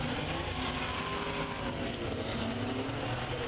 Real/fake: real